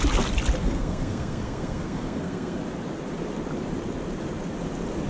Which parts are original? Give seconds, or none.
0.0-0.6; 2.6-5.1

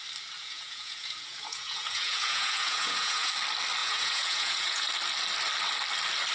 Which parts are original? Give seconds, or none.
0.0-0.4; 3.3-3.8; 4.9-6.3

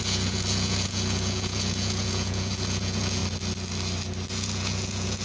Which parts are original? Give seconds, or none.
3.2-4.3

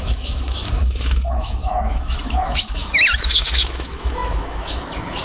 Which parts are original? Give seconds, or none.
none

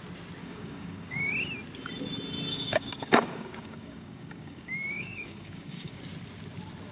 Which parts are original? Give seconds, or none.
0.0-0.4; 1.3-2.5; 6.0-6.9